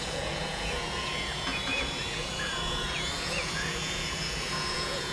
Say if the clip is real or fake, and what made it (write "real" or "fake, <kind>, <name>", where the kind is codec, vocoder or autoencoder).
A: fake, vocoder, Vocos